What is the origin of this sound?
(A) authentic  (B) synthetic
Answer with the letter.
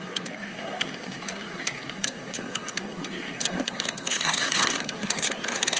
B